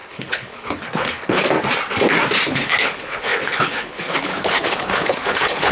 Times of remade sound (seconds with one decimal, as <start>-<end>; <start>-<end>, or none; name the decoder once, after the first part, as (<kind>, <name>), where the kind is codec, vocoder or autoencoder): 0.0-1.4 (codec, HILCodec); 2.5-5.7